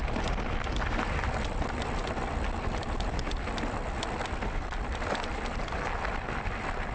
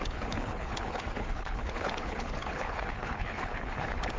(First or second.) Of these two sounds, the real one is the first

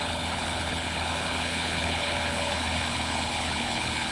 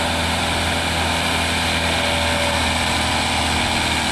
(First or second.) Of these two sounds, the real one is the second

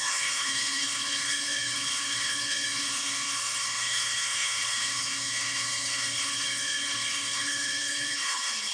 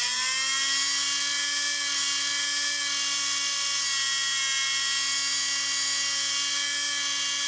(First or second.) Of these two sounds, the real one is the second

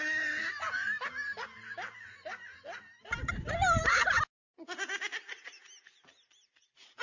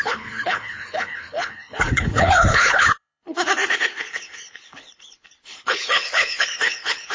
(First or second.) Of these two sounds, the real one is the first